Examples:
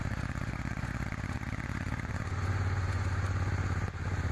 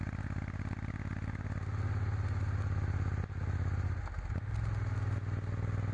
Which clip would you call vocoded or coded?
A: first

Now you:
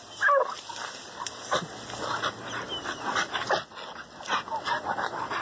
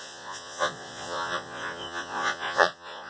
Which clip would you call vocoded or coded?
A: second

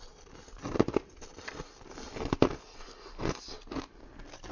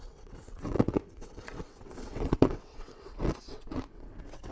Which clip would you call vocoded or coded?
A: second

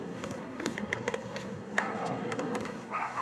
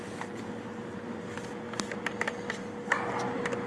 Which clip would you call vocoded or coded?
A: first